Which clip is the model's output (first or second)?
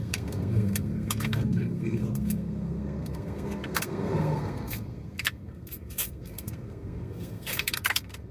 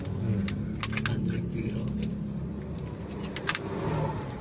first